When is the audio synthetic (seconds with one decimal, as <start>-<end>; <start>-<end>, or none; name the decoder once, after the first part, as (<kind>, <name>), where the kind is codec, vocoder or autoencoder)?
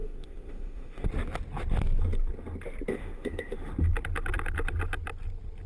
0.0-1.1 (autoencoder, DAC-VAE); 2.9-3.7